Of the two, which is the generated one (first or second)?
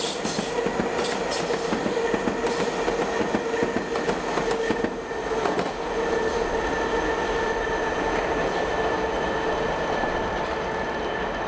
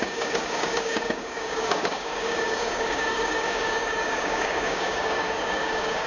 second